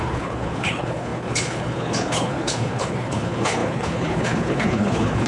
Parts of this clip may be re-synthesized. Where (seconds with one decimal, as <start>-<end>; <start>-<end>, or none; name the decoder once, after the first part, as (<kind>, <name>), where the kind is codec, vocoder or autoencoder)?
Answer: 0.0-5.3 (codec, HILCodec)